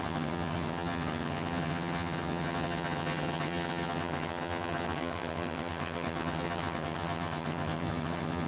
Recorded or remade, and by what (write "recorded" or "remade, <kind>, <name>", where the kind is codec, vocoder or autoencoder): remade, vocoder, HiFi-GAN